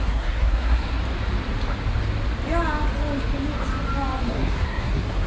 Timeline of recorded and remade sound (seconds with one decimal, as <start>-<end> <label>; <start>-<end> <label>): 0.0-1.0 remade; 1.0-4.2 recorded; 4.2-5.3 remade